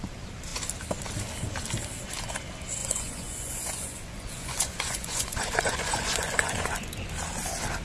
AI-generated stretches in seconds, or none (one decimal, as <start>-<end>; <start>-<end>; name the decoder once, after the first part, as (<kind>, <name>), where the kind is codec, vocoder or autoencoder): 2.8-7.1 (vocoder, Vocos)